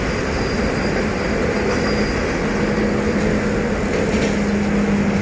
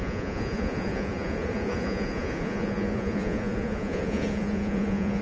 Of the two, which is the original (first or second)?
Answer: first